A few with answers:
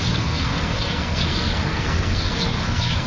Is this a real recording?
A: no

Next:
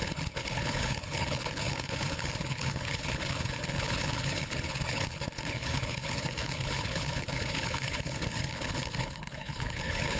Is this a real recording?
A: no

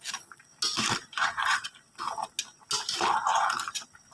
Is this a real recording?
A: yes